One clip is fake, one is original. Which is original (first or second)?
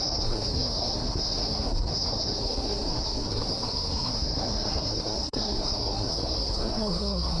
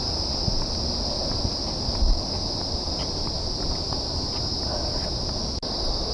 second